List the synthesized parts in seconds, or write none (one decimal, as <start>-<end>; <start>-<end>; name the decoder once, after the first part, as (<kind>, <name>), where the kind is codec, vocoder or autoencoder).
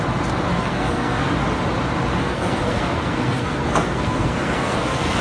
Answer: 0.5-1.3 (codec, SNAC); 2.2-5.2